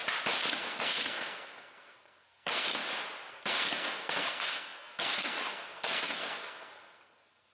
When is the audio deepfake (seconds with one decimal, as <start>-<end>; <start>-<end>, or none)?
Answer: 0.6-2.8; 3.3-7.5